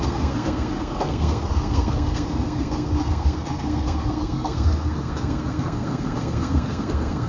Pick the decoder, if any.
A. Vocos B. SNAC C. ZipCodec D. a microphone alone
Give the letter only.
B